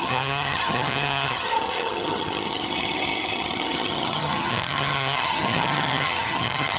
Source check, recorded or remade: remade